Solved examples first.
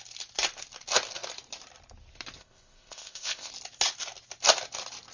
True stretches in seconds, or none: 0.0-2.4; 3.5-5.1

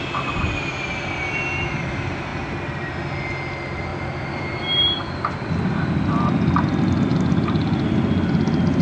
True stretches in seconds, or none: 0.0-2.3; 2.9-3.9; 6.5-8.8